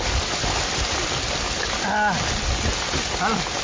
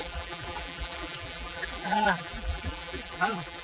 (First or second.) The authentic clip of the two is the first